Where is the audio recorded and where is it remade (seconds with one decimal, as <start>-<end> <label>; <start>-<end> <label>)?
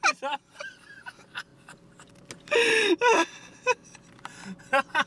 0.0-5.1 recorded